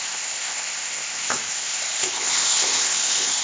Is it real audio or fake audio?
fake